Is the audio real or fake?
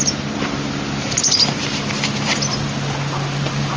real